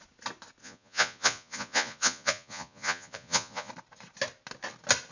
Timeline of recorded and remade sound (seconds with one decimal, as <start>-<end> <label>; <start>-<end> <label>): 0.0-0.6 recorded; 0.6-3.7 remade; 3.7-5.1 recorded